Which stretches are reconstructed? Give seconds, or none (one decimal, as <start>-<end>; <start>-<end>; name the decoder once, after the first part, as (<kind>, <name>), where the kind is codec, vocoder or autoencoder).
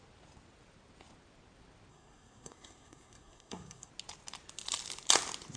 1.9-3.9 (codec, SNAC)